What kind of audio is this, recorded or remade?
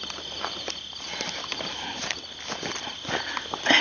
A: recorded